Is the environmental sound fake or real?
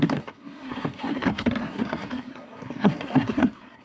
fake